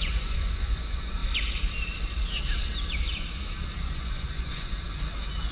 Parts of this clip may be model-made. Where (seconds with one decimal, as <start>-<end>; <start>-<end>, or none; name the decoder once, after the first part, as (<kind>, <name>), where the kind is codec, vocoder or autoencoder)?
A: 0.0-1.2 (vocoder, Vocos); 3.8-4.7

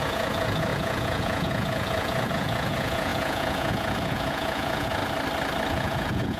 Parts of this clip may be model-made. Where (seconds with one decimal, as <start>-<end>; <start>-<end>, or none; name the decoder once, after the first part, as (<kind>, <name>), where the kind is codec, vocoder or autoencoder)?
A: 0.0-5.0 (vocoder, Vocos); 5.7-6.4

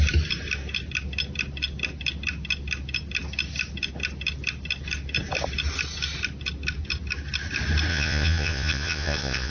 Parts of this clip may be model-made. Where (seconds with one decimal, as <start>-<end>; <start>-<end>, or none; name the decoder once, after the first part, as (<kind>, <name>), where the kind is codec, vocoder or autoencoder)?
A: 7.9-9.5 (vocoder, Vocos)

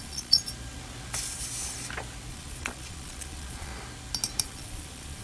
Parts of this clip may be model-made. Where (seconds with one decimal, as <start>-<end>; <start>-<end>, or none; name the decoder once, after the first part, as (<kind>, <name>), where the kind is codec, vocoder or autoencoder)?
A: 0.0-0.4 (vocoder, Vocos); 2.3-3.7; 4.4-5.2